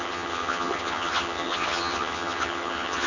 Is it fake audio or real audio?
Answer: fake